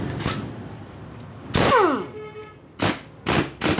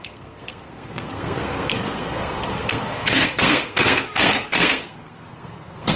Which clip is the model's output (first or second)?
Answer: second